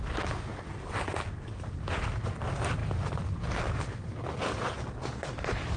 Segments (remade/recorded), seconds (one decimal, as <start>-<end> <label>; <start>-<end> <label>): 0.0-5.8 recorded